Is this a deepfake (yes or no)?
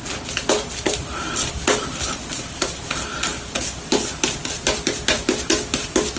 no